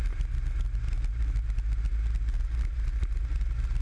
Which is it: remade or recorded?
recorded